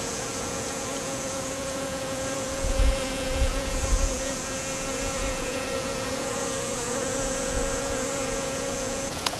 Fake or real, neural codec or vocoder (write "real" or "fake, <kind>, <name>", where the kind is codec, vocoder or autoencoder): fake, vocoder, Vocos